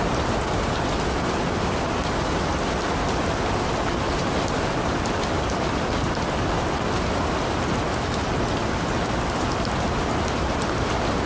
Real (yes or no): yes